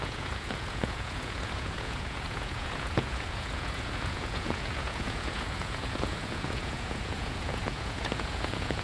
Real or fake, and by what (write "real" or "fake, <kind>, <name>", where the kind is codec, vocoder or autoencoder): fake, vocoder, Vocos